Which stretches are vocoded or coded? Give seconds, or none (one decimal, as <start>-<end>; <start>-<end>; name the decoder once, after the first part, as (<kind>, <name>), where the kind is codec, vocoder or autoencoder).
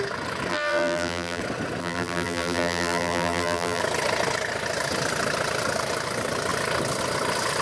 0.5-1.4 (vocoder, BigVGAN v2); 1.8-3.8